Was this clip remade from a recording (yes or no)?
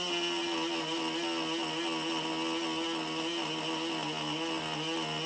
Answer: no